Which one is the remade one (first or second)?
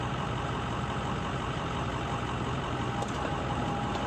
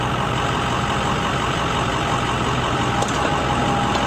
first